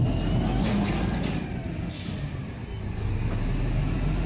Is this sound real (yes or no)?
yes